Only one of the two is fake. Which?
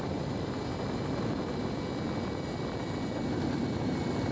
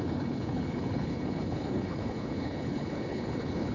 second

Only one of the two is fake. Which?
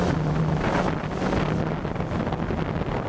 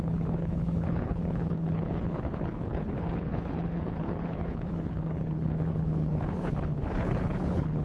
second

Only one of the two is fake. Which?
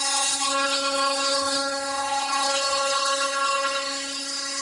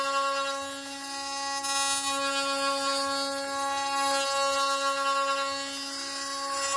first